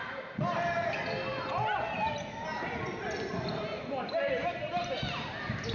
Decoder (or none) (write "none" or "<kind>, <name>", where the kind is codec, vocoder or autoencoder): none